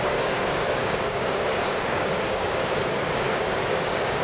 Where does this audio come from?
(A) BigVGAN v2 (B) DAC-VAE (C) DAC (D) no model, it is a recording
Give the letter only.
C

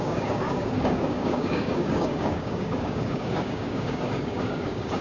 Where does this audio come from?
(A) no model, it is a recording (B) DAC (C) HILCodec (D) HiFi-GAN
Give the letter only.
B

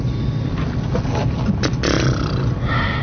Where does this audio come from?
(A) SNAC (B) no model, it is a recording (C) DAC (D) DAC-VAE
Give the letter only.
B